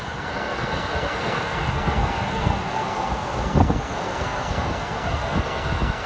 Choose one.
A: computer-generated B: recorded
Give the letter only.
A